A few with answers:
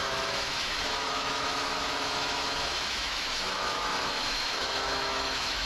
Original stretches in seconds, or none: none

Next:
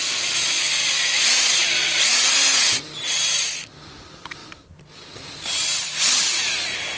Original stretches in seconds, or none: 0.0-7.0

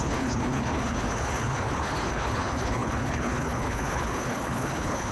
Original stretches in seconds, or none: none

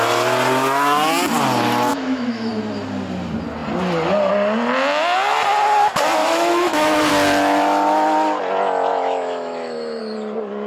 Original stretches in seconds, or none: 0.0-1.9; 2.5-6.2; 7.1-8.9; 10.0-10.7

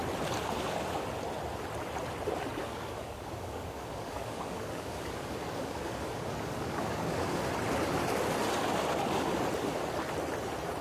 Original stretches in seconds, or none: 0.0-2.6; 7.4-10.8